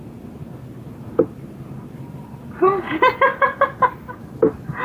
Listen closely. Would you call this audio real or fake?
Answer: real